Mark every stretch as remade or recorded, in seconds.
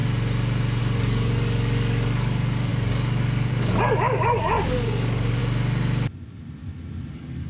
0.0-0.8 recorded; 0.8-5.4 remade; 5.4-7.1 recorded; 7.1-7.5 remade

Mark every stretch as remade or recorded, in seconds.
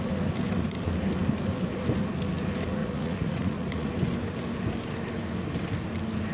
0.0-2.8 recorded; 2.8-3.9 remade; 3.9-6.3 recorded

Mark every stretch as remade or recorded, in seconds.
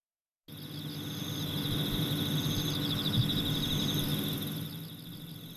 0.0-5.6 recorded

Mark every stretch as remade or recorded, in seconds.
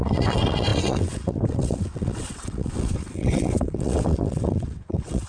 0.0-5.3 remade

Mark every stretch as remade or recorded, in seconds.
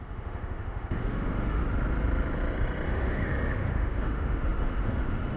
0.0-1.6 remade; 1.6-2.9 recorded; 2.9-5.4 remade